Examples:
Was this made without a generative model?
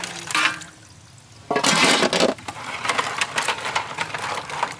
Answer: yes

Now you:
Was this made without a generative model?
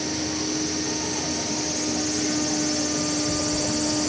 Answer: yes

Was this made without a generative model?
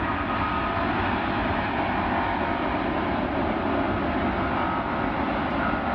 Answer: yes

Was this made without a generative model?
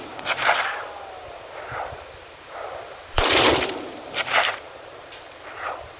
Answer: no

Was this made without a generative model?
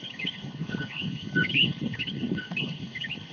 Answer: no